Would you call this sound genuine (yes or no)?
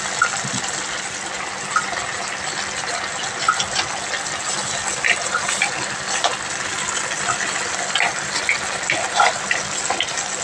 yes